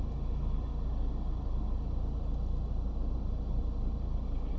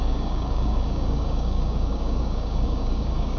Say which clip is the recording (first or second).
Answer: first